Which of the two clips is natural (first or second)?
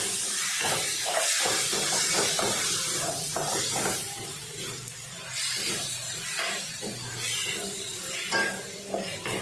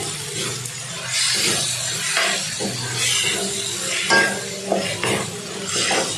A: second